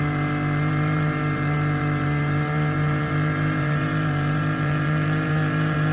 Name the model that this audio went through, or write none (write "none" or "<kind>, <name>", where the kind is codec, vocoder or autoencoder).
vocoder, BigVGAN v2